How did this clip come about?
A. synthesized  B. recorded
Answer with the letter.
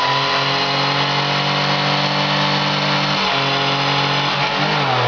B